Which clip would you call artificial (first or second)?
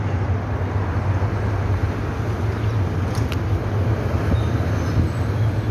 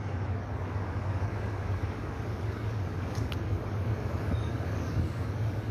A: second